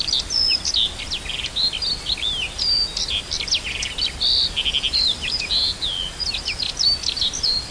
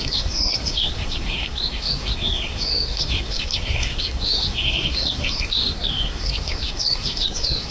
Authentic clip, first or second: first